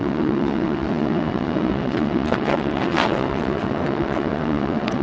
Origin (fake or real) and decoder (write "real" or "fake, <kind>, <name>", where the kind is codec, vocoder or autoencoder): fake, vocoder, WaveNeXt